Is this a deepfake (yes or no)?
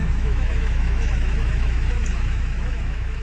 yes